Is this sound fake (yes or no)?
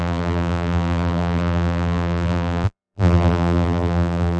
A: yes